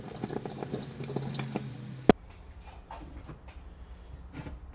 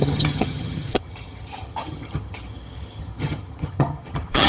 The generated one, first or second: second